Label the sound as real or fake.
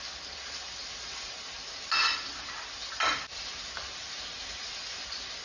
real